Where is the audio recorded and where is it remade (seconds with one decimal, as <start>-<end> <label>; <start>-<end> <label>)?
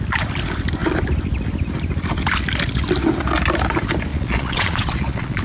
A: 0.0-4.1 recorded; 4.1-5.4 remade